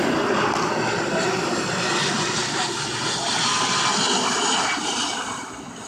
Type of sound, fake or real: real